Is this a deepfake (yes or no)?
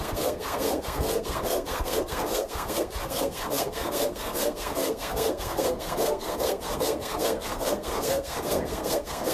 yes